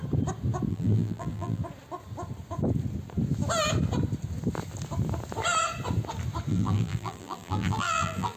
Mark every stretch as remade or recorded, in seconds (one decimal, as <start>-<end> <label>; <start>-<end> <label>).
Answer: 0.0-0.7 recorded; 0.7-1.6 remade; 1.6-6.5 recorded; 6.5-8.4 remade